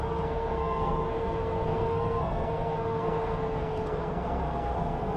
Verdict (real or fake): fake